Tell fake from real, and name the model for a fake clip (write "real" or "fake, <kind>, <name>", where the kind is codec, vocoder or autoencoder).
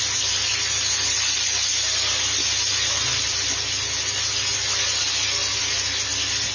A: real